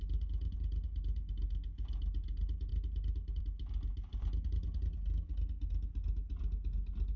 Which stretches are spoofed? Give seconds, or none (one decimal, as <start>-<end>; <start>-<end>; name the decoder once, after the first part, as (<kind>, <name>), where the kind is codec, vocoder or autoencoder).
none